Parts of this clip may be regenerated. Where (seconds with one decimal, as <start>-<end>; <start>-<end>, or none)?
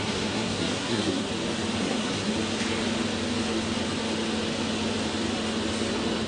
0.0-1.3; 1.8-2.3